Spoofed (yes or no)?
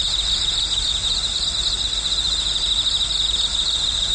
no